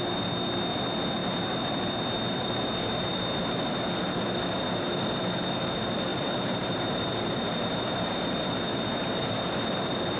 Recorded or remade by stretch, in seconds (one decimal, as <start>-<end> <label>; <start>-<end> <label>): 0.0-6.1 recorded; 6.1-9.6 remade; 9.6-10.2 recorded